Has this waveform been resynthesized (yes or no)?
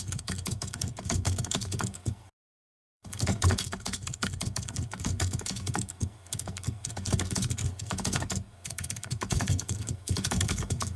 yes